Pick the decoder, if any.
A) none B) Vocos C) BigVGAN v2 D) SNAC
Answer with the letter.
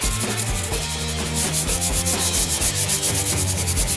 A